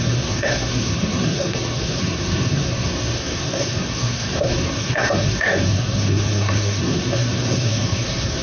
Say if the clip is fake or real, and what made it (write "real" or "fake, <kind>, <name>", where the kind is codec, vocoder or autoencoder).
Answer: fake, codec, SNAC